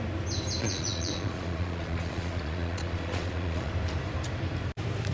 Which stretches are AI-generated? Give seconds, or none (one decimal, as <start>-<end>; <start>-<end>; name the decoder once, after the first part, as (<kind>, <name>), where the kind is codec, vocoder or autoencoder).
0.6-3.7 (vocoder, Vocos)